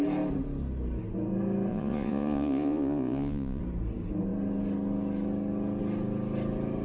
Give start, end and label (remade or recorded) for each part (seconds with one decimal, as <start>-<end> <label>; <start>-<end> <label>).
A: 0.0-1.7 recorded; 1.7-3.6 remade; 3.6-6.8 recorded